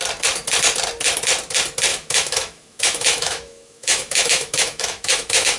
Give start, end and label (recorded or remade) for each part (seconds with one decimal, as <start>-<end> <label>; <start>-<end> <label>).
0.0-1.9 recorded; 1.9-5.6 remade